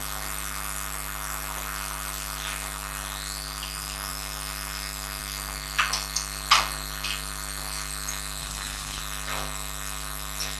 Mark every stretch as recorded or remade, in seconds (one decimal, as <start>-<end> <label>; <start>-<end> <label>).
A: 0.0-8.4 recorded; 8.4-9.0 remade; 9.0-10.6 recorded